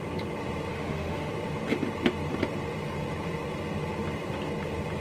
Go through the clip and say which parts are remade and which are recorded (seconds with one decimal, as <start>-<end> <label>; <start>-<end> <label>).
0.0-0.7 recorded; 0.7-1.3 remade; 1.3-5.0 recorded